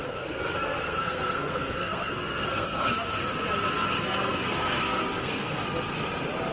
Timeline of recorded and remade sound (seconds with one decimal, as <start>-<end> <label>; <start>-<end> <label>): 0.0-3.2 remade; 3.2-4.0 recorded; 4.0-5.6 remade; 5.6-6.5 recorded